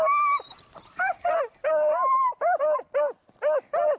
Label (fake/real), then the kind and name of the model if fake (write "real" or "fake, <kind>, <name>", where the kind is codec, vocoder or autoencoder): real